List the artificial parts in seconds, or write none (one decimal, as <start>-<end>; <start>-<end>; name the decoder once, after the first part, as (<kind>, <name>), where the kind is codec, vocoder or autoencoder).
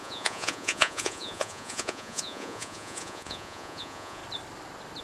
0.0-4.2 (vocoder, Vocos)